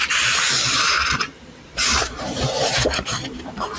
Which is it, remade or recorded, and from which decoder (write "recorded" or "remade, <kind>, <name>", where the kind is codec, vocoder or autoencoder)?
remade, vocoder, BigVGAN v2